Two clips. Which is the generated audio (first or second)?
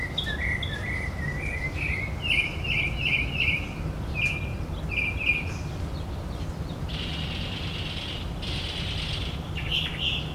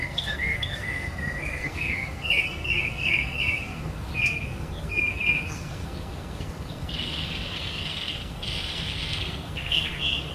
second